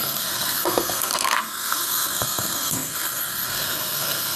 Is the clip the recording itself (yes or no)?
no